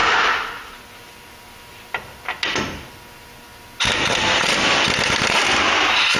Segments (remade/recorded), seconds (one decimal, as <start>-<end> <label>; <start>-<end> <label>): 0.0-6.2 recorded